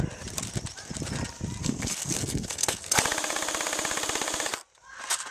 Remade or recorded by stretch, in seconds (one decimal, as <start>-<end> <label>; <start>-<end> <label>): 0.0-1.6 recorded; 1.6-3.0 remade; 3.0-5.3 recorded